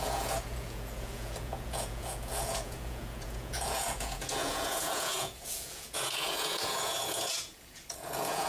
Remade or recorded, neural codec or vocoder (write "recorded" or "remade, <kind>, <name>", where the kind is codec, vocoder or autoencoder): remade, vocoder, Vocos